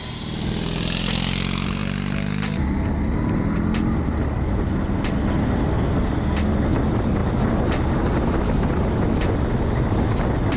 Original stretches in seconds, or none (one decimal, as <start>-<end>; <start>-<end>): 0.0-10.6